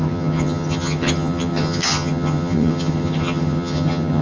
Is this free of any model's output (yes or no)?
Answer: no